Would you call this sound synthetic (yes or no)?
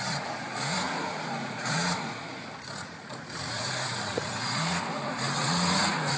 yes